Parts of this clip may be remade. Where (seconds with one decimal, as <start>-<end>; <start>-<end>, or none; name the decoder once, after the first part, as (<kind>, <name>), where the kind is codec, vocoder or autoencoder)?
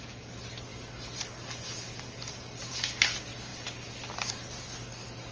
none